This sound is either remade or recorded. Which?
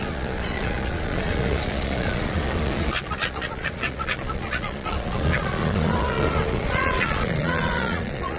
remade